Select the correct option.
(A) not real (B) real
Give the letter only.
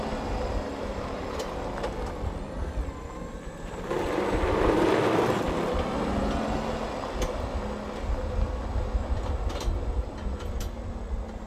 B